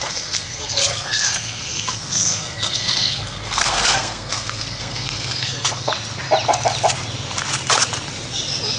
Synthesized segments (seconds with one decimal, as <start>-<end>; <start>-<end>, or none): 0.0-5.9